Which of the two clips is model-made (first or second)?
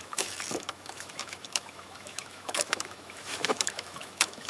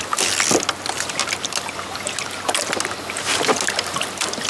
first